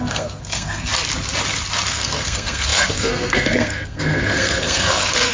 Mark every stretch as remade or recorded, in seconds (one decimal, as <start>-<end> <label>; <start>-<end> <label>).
0.0-0.9 remade; 0.9-1.9 recorded; 1.9-5.3 remade